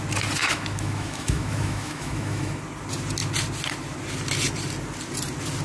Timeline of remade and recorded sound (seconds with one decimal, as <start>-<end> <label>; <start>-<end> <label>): 0.0-0.4 recorded; 0.4-2.6 remade; 2.6-5.6 recorded